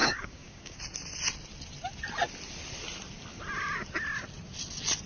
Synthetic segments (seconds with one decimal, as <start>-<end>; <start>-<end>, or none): 0.0-0.8